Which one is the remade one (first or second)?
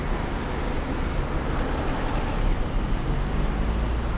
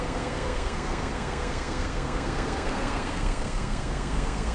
second